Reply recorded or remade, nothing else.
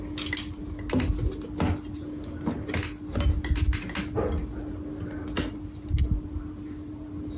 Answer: recorded